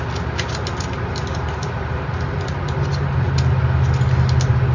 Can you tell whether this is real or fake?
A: real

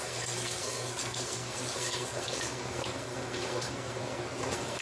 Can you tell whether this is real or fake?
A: fake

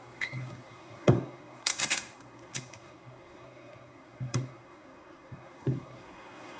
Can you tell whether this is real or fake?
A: fake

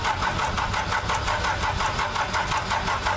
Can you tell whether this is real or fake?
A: real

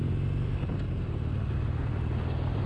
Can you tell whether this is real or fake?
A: real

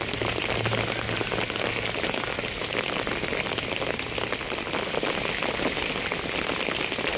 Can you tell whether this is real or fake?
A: real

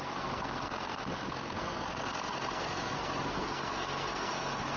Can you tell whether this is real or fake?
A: fake